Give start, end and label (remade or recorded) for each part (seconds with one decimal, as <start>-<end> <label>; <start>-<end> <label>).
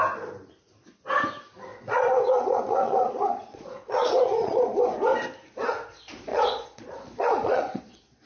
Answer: 0.0-1.7 recorded; 1.7-4.8 remade; 4.8-6.3 recorded; 6.3-8.3 remade